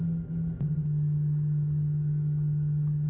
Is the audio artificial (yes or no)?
no